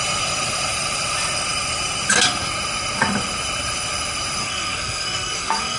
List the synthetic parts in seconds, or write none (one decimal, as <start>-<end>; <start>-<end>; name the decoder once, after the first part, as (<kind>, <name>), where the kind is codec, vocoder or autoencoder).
4.4-5.8 (codec, SNAC)